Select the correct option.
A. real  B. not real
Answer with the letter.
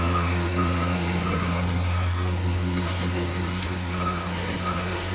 B